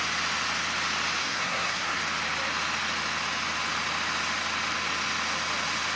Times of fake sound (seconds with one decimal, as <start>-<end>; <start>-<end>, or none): 1.2-2.0